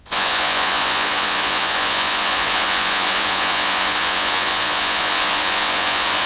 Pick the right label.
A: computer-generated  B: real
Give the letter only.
A